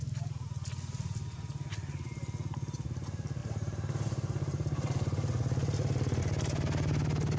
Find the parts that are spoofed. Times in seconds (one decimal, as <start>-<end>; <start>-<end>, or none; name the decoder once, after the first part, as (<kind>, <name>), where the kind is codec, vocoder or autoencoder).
3.4-6.2 (vocoder, BigVGAN v2)